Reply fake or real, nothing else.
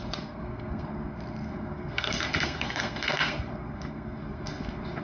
fake